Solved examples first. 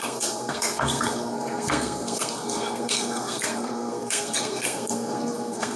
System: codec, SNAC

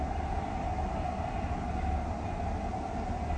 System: none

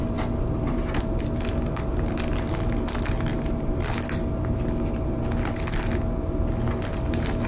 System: none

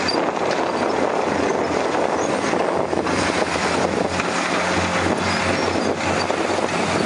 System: none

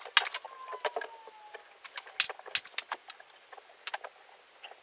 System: none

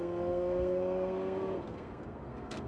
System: codec, SNAC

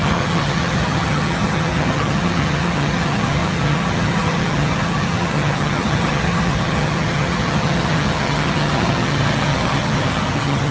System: vocoder, HiFi-GAN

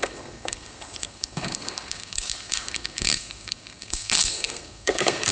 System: codec, SNAC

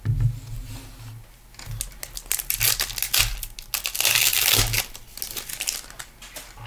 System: none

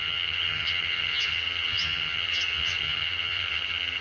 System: vocoder, HiFi-GAN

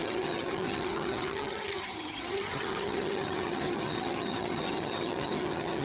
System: vocoder, HiFi-GAN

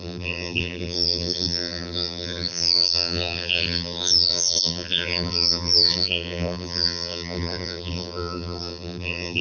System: vocoder, BigVGAN v2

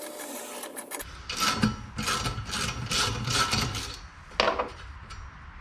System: none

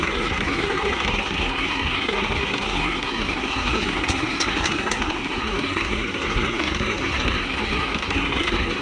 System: codec, SNAC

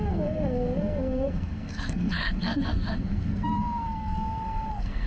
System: codec, SNAC